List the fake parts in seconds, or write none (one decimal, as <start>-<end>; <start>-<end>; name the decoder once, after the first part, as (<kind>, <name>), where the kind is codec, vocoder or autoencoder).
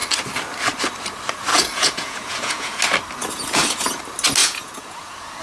1.5-2.8 (vocoder, Vocos); 3.2-4.0; 4.4-5.4